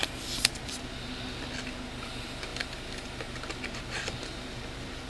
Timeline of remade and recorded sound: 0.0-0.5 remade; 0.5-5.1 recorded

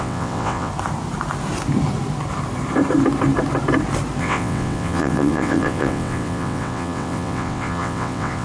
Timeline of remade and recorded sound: 0.0-0.7 remade; 0.7-4.2 recorded; 4.2-8.4 remade

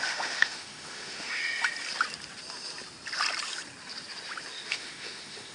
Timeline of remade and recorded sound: 0.0-1.4 remade; 1.4-4.7 recorded; 4.7-5.5 remade

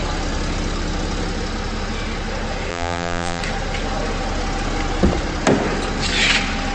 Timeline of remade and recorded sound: 0.0-2.7 recorded; 2.7-3.4 remade; 3.4-6.7 recorded

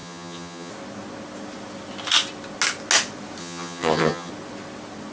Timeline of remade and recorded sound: 0.0-0.7 remade; 0.7-3.4 recorded; 3.4-4.3 remade; 4.3-5.1 recorded